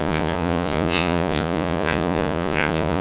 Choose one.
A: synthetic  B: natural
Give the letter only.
A